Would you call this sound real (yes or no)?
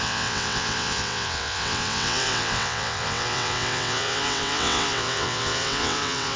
no